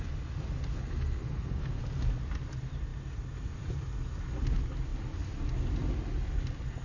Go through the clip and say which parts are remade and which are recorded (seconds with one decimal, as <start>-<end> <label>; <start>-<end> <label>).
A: 0.0-0.7 recorded; 0.7-1.8 remade; 1.8-6.8 recorded